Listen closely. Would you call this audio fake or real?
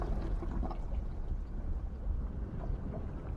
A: real